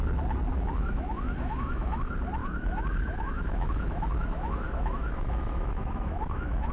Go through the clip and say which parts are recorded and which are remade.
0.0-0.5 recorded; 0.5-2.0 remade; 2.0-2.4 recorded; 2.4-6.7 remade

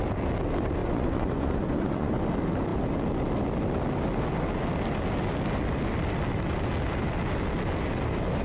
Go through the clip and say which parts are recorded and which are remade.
0.0-0.8 recorded; 0.8-2.1 remade; 2.1-8.4 recorded

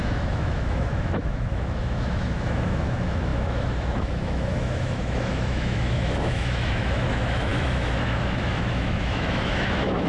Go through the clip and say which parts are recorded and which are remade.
0.0-10.1 remade

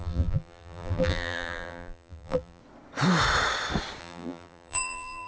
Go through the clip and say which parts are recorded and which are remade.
0.0-2.6 remade; 2.6-4.0 recorded; 4.0-5.3 remade